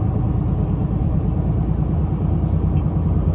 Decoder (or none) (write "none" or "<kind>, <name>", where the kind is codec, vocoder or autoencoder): none